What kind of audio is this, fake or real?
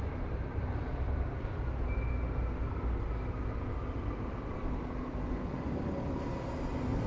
real